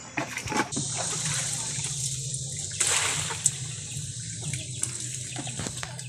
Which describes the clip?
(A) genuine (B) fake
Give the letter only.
A